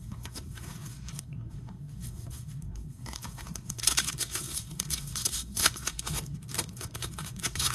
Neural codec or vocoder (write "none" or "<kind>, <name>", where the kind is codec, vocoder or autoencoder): codec, SNAC